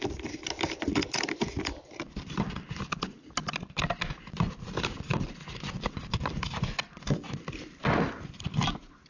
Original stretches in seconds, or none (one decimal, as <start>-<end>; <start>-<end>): 0.0-9.1